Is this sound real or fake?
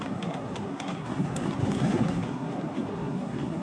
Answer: fake